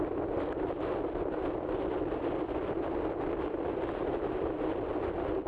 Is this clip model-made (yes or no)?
no